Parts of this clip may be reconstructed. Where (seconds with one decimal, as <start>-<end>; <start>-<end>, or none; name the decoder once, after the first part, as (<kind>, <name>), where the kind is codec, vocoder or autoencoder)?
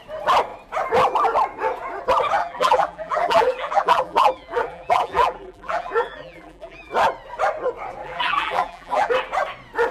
2.4-6.9 (vocoder, BigVGAN v2); 8.0-9.1